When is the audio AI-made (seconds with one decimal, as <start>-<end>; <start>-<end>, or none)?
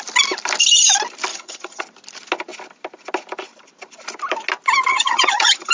1.3-1.8; 4.9-5.7